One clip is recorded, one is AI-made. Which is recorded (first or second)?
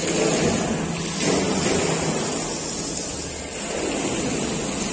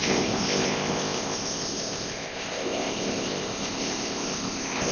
first